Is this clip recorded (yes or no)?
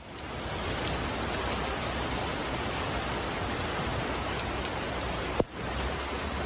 yes